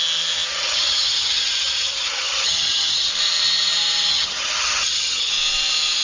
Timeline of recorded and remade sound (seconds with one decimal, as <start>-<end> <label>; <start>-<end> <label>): 0.0-0.5 recorded; 0.5-3.1 remade; 3.1-4.1 recorded; 4.1-5.3 remade; 5.3-6.0 recorded